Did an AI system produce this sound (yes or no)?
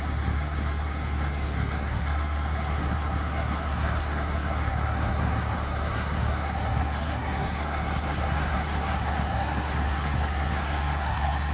yes